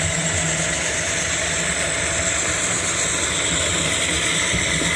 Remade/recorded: recorded